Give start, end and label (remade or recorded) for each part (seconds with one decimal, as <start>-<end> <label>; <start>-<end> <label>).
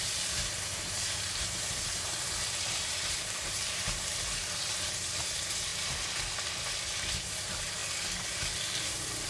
0.0-2.1 remade; 2.1-2.7 recorded; 2.7-5.7 remade; 5.7-7.3 recorded; 7.3-7.8 remade; 7.8-8.3 recorded; 8.3-9.3 remade